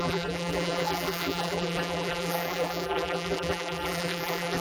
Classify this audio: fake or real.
fake